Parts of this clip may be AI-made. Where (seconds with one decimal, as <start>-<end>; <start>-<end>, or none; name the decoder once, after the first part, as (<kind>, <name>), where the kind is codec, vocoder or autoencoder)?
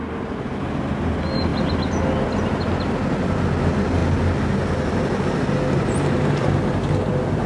none